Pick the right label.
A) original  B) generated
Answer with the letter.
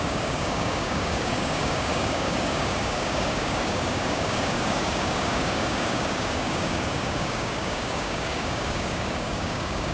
B